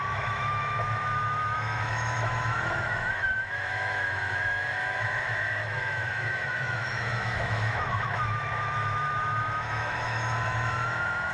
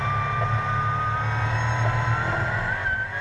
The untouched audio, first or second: second